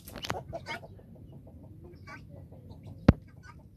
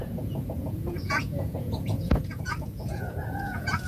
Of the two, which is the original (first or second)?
first